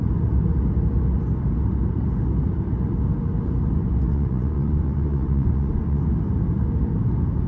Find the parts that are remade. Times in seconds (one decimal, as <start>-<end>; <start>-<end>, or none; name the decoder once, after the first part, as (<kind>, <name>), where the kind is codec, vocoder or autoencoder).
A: 4.1-6.0 (vocoder, Vocos)